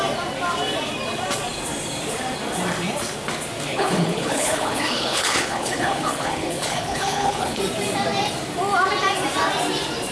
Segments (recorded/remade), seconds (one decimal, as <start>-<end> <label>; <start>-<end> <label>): 0.0-3.7 recorded; 3.7-7.6 remade; 7.6-10.1 recorded